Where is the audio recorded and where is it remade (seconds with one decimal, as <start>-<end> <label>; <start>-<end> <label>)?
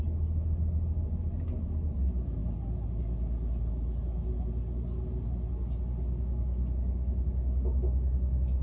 0.0-8.6 recorded